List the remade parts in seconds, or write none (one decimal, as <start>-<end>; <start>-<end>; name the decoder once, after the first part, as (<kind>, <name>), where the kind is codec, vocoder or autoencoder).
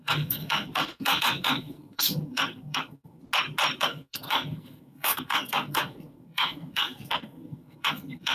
0.0-3.2 (codec, SNAC); 3.8-8.3